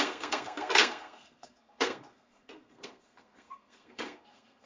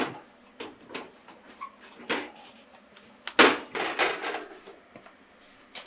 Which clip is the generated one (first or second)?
first